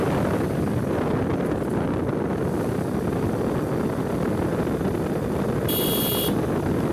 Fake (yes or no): no